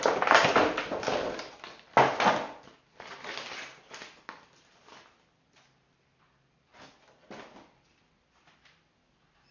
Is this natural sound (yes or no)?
yes